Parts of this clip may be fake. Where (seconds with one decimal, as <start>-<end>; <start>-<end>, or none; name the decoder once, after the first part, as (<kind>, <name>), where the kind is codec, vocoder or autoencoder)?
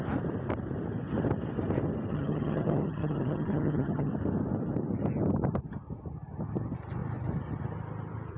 2.1-4.1 (vocoder, HiFi-GAN)